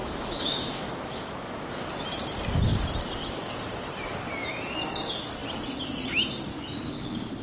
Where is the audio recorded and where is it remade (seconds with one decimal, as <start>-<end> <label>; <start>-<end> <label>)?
0.0-1.8 remade; 1.8-7.4 recorded